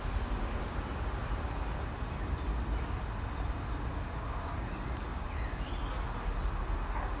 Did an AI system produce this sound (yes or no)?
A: no